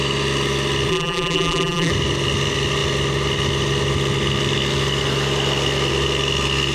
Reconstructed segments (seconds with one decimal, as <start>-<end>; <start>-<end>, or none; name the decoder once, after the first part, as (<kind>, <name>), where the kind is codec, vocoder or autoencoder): 0.9-1.9 (vocoder, BigVGAN v2)